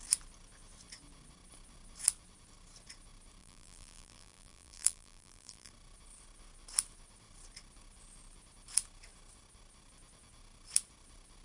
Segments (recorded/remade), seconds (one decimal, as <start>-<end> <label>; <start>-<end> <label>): 0.0-3.4 recorded; 3.4-5.7 remade; 5.7-11.4 recorded